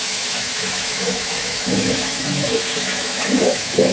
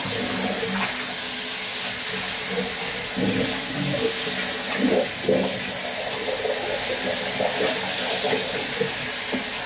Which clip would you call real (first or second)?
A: second